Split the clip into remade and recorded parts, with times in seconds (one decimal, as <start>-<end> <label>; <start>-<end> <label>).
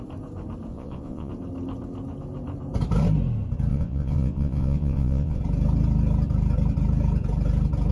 0.0-0.7 recorded; 0.7-1.3 remade; 1.3-3.7 recorded; 3.7-5.4 remade; 5.4-7.9 recorded